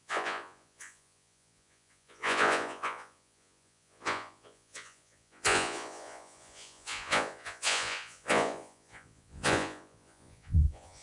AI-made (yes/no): yes